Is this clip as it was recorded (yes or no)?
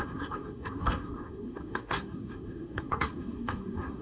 no